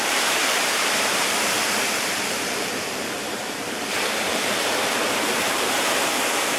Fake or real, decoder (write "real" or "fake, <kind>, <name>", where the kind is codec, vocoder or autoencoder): fake, vocoder, BigVGAN v2